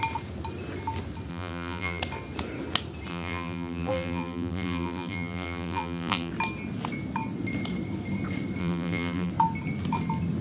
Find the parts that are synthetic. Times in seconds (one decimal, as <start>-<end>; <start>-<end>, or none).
1.3-2.0; 3.1-6.3; 8.6-9.3